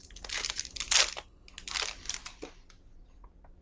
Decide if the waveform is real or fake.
real